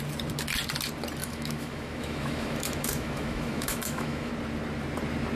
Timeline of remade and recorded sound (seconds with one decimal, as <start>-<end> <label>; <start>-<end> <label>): 0.0-1.2 recorded; 1.2-4.3 remade; 4.3-5.4 recorded